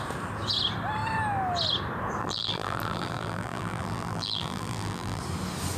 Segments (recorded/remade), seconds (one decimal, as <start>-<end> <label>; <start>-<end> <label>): 0.0-2.2 recorded; 2.2-5.2 remade; 5.2-5.8 recorded